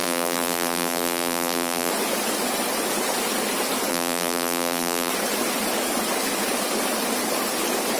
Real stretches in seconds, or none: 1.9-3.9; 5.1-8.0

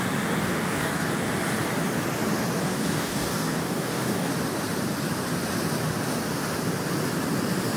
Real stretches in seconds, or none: 0.0-0.4; 1.1-2.6; 4.3-7.8

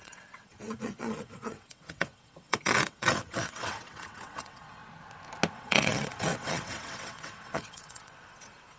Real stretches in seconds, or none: 4.8-5.5

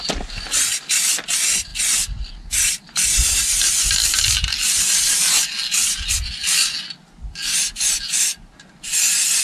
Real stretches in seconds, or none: 0.0-9.4

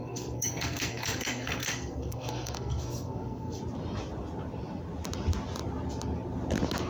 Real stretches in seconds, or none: 3.6-6.9

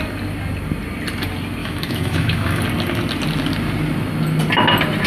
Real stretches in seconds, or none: 0.0-1.6; 2.6-5.1

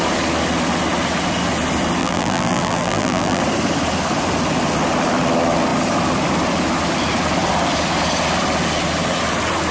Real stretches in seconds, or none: 0.0-2.0; 3.4-9.7

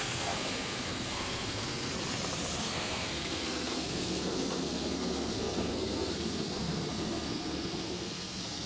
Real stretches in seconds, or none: 1.9-2.6